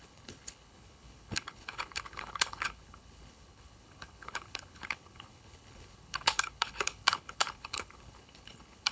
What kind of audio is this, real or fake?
fake